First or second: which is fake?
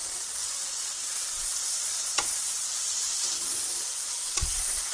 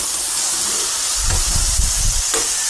first